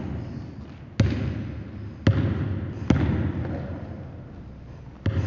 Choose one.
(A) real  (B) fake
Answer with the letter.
A